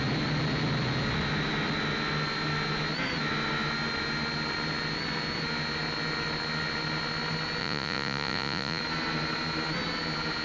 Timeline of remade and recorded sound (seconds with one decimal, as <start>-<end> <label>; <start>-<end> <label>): 0.0-7.6 recorded; 7.6-8.8 remade; 8.8-10.4 recorded